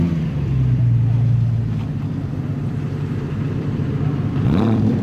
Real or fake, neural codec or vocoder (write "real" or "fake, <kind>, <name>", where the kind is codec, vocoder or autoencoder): fake, vocoder, BigVGAN v2